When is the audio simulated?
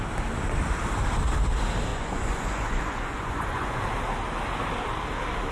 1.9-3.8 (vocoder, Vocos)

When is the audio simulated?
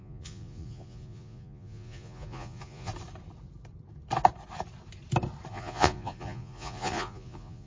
0.0-2.9 (vocoder, Vocos); 5.5-7.7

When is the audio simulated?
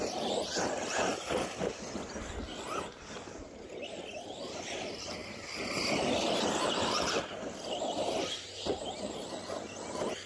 none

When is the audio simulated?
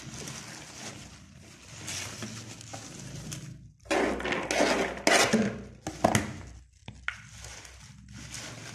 none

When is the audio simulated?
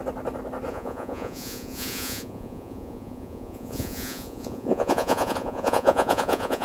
0.7-6.6 (vocoder, Vocos)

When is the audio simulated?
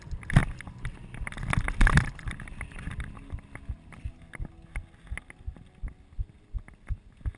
none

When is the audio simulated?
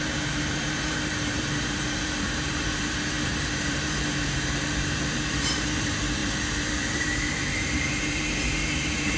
0.0-9.2 (vocoder, BigVGAN v2)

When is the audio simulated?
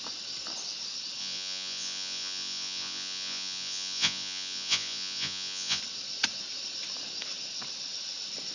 1.2-5.8 (vocoder, Vocos)